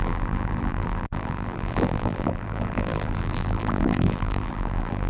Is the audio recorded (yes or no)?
no